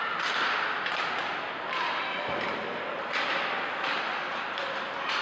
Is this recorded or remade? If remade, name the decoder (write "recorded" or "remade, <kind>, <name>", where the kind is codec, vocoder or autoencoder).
recorded